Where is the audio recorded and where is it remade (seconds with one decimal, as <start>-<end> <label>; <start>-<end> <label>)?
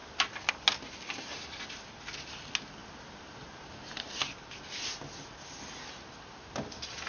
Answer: 0.0-2.8 recorded; 2.8-4.2 remade; 4.2-7.1 recorded